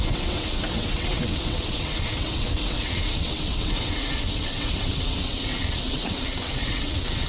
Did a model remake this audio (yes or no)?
yes